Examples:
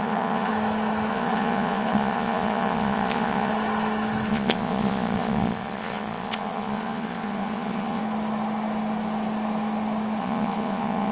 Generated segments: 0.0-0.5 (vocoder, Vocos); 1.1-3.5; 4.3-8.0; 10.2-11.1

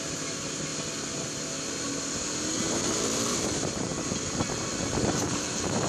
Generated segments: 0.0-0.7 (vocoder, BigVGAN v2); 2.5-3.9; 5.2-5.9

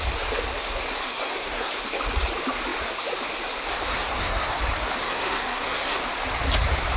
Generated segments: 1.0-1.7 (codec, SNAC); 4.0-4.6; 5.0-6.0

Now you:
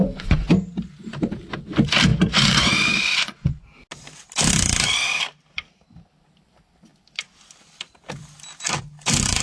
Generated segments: 0.0-0.5 (vocoder, Vocos); 2.1-3.6